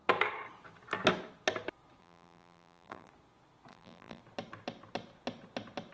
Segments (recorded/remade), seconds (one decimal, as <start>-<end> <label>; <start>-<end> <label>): 0.0-2.0 recorded; 2.0-3.1 remade; 3.1-3.7 recorded; 3.7-4.2 remade; 4.2-5.9 recorded